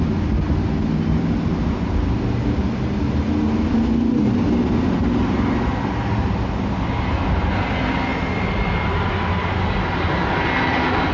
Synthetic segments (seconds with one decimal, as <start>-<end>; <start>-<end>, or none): none